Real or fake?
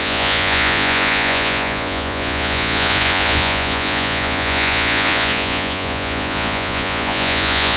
fake